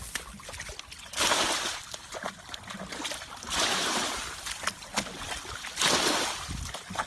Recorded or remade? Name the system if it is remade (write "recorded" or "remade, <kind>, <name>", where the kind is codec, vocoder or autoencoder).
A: recorded